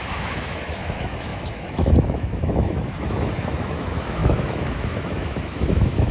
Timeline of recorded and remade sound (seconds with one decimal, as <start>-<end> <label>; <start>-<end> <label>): 0.0-6.1 remade